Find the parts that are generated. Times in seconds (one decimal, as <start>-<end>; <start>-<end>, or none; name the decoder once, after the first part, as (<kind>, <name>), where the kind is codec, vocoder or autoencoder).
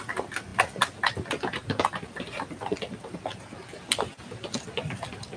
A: none